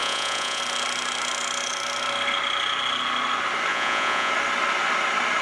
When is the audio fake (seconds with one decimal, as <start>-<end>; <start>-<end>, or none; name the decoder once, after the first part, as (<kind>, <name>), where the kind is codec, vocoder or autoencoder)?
0.0-0.6 (vocoder, Vocos); 3.7-4.3